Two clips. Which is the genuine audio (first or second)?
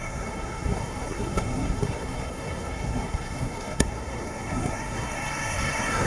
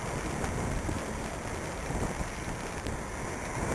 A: second